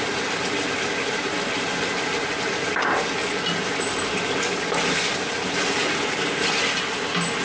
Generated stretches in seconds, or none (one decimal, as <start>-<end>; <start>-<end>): none